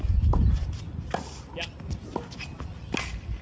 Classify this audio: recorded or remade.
recorded